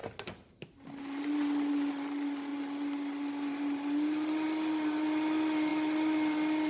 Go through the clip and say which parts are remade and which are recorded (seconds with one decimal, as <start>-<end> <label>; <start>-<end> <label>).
0.0-6.7 recorded